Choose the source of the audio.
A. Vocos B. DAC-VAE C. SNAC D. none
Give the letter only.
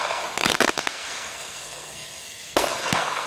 C